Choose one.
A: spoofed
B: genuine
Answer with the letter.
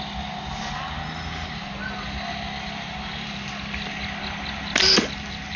B